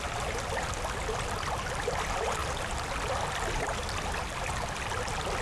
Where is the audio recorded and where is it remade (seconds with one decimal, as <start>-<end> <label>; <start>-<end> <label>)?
0.0-5.4 recorded